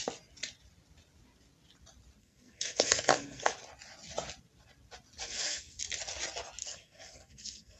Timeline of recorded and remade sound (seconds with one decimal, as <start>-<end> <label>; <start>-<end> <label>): 0.0-2.2 recorded; 2.2-3.5 remade; 3.5-5.2 recorded; 5.2-5.8 remade; 5.8-6.6 recorded; 6.6-7.8 remade